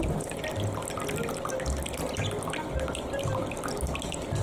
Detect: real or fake real